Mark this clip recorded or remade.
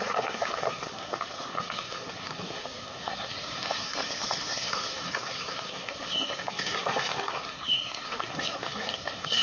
remade